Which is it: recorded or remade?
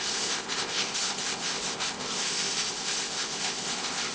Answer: remade